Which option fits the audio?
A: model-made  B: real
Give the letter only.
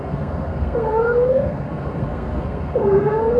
A